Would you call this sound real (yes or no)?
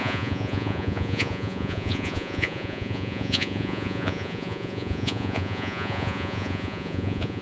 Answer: no